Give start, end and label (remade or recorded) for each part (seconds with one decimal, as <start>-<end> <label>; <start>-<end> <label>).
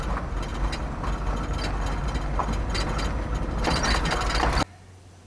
0.0-5.3 recorded